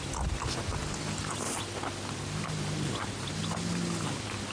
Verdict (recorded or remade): recorded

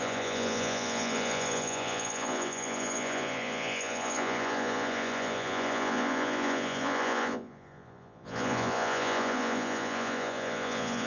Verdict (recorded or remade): remade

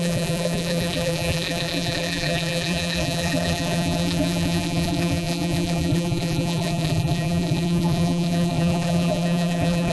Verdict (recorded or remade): remade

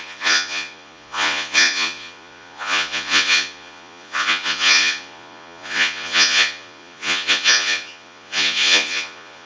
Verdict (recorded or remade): remade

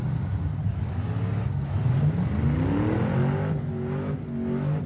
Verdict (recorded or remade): recorded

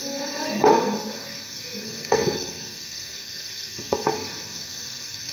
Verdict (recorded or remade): remade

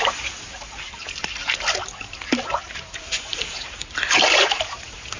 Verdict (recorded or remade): recorded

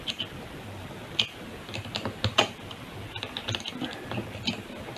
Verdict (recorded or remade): recorded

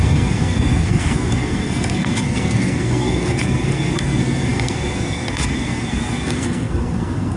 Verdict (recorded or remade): remade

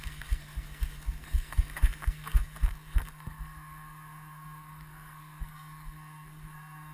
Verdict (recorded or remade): remade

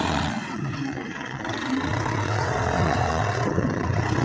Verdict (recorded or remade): remade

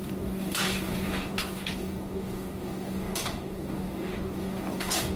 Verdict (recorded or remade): remade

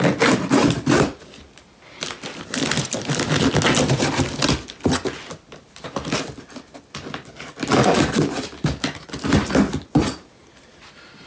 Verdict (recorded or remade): recorded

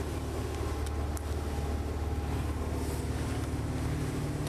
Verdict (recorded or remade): recorded